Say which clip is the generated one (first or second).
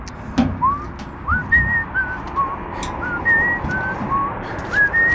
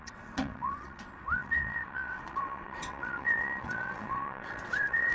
second